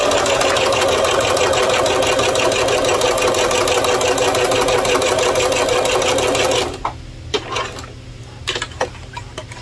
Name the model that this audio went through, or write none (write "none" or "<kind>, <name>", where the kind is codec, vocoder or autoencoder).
none